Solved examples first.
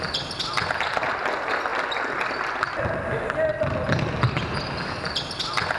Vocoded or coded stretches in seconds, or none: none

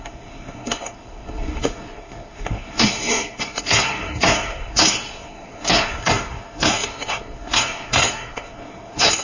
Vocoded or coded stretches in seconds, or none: 0.0-9.2 (codec, SNAC)

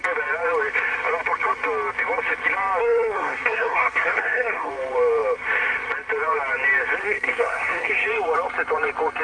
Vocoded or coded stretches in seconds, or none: 2.8-4.7 (codec, SNAC); 7.0-7.9

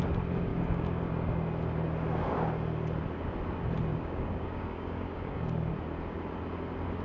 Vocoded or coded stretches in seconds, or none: 0.5-1.1 (codec, DAC); 3.9-5.7

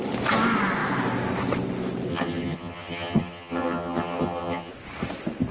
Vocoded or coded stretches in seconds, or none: 2.1-4.7 (vocoder, HiFi-GAN)

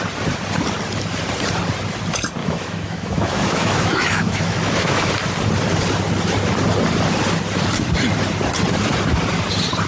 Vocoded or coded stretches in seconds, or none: 2.4-5.1 (autoencoder, DAC-VAE)